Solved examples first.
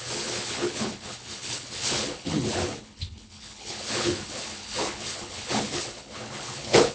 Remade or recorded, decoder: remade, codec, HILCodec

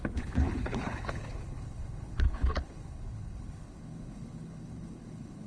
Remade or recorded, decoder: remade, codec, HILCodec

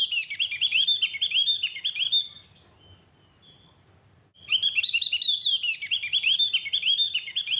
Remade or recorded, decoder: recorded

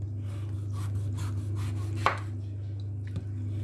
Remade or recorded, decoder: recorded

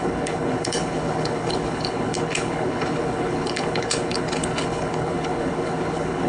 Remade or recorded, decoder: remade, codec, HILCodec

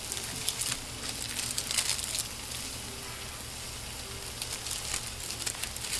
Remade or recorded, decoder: recorded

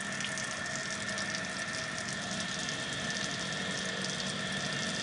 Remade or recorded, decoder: recorded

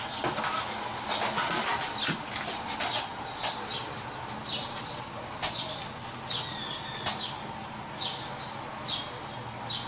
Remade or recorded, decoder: recorded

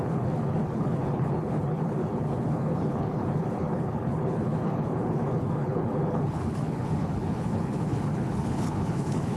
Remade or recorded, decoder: remade, codec, HILCodec